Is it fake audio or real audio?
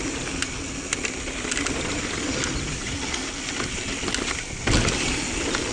real